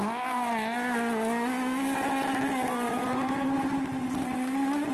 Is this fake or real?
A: real